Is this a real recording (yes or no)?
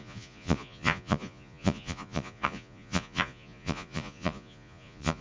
no